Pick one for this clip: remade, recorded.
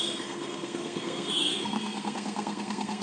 remade